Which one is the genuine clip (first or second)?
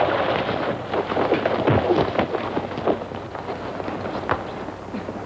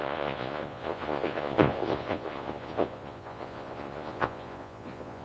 first